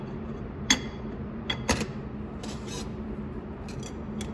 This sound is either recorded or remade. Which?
recorded